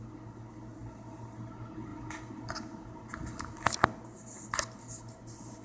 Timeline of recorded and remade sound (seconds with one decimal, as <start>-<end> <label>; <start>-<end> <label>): 0.0-5.6 recorded